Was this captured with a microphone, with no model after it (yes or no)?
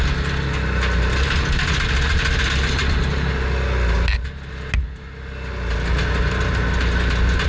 yes